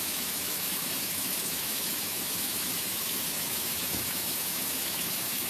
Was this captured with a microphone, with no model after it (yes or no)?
no